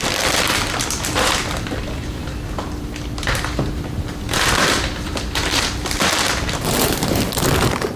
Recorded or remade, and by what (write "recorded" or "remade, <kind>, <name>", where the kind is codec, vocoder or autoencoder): remade, vocoder, BigVGAN v2